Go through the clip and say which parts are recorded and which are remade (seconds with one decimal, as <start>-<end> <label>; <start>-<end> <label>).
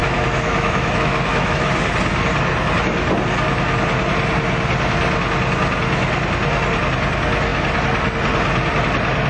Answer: 0.0-1.7 remade; 1.7-9.3 recorded